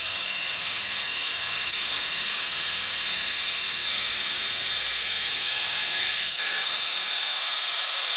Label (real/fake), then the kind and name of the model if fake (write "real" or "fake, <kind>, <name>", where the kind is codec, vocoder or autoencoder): fake, codec, SNAC